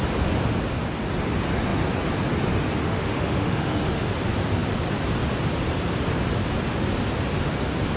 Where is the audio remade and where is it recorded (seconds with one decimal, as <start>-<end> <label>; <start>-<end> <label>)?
0.0-2.8 recorded; 2.8-4.1 remade; 4.1-8.0 recorded